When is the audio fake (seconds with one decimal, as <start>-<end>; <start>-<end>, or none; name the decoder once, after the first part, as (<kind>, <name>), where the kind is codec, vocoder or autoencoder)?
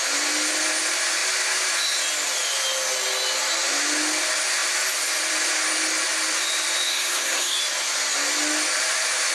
6.9-7.6 (codec, SNAC)